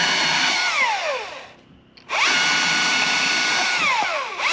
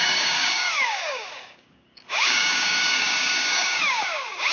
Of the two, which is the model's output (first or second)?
second